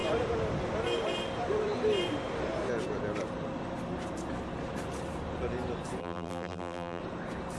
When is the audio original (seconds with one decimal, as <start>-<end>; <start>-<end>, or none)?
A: 0.0-6.0; 7.0-7.6